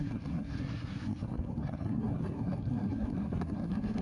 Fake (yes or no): yes